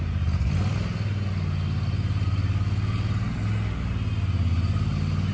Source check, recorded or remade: recorded